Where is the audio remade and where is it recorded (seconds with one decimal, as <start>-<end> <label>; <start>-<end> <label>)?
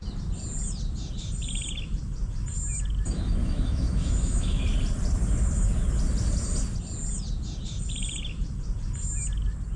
0.0-3.4 recorded; 3.4-4.6 remade; 4.6-9.8 recorded